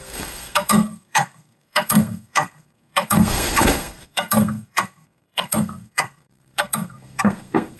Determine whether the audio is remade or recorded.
remade